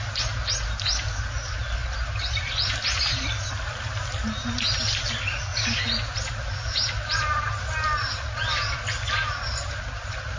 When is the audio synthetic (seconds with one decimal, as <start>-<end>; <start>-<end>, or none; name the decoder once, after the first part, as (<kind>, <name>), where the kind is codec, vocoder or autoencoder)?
none